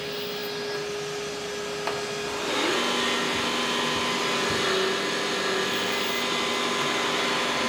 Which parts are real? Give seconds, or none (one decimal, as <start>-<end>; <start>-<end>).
0.0-7.7